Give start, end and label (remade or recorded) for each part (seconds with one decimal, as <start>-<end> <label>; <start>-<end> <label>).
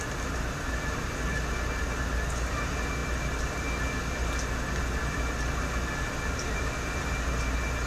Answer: 0.0-7.9 recorded